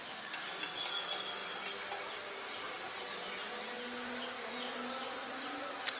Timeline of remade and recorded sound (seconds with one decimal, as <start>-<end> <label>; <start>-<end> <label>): 0.0-6.0 recorded